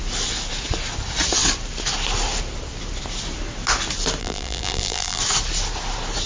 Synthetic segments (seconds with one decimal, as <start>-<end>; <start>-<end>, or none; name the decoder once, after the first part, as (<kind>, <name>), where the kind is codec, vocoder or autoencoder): 4.2-5.2 (vocoder, BigVGAN v2)